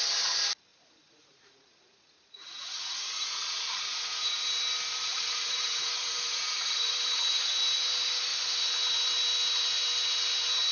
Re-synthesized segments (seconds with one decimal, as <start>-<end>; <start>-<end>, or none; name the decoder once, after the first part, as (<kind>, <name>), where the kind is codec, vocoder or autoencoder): 0.7-4.4 (vocoder, Vocos); 5.1-7.5